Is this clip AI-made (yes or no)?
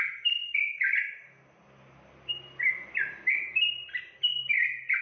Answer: no